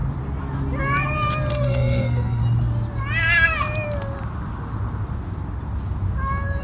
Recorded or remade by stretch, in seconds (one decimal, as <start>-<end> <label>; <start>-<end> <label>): 0.0-1.5 recorded; 1.5-2.4 remade; 2.4-6.6 recorded